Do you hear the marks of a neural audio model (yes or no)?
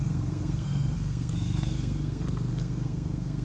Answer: yes